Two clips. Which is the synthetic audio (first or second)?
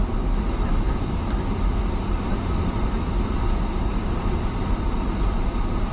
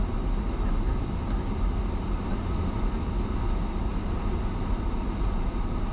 first